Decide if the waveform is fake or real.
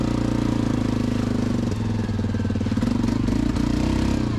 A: real